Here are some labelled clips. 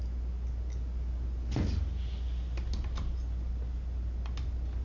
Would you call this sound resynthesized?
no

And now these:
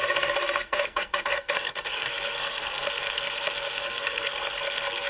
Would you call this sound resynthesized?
yes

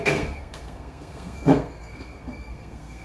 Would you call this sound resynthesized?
yes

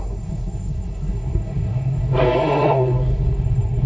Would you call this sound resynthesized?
yes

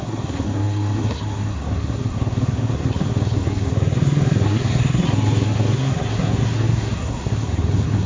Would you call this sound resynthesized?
yes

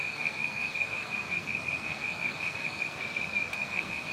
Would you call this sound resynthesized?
yes